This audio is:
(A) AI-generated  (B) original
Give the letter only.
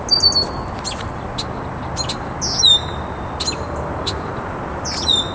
B